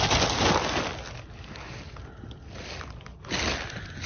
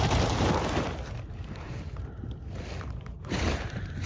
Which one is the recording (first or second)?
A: first